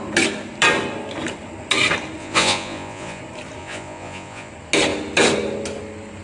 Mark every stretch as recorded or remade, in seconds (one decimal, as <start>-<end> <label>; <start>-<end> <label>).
0.0-2.2 recorded; 2.2-3.2 remade; 3.2-3.6 recorded; 3.6-4.5 remade; 4.5-6.2 recorded